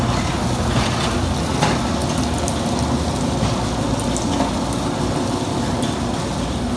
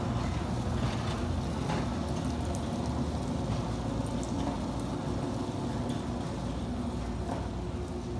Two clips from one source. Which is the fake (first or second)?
first